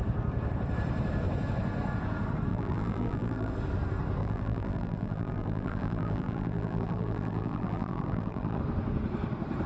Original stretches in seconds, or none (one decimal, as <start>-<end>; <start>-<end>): 0.0-2.5; 3.5-4.2; 8.6-9.7